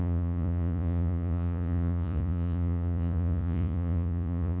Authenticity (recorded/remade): remade